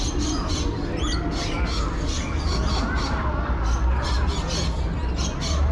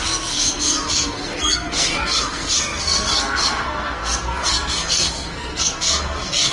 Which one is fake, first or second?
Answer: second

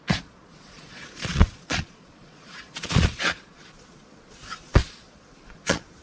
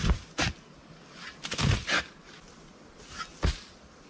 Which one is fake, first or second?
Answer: first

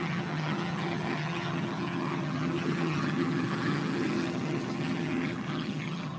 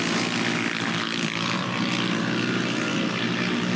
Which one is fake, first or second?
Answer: first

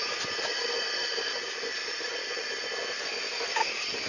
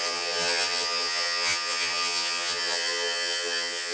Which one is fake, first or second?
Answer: second